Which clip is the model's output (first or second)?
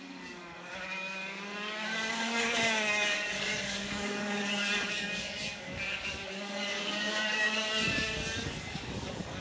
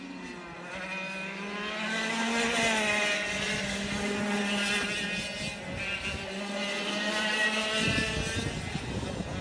first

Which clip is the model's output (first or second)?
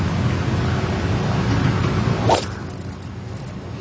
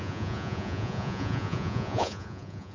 second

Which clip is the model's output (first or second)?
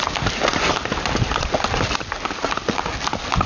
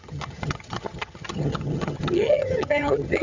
second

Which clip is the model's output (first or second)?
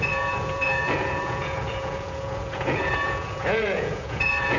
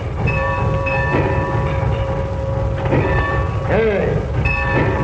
first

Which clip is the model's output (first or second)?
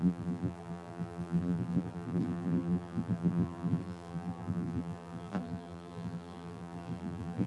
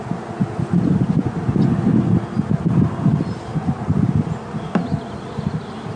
first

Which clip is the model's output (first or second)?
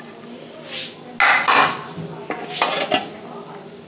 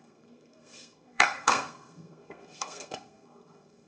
second